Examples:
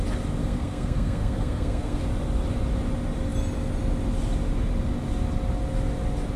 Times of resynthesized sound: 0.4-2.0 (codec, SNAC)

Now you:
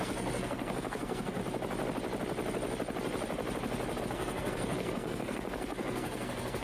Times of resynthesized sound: 0.0-1.4 (codec, SNAC); 4.0-6.6